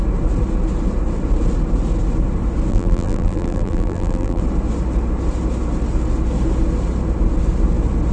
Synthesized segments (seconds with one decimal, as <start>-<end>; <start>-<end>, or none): 2.7-4.4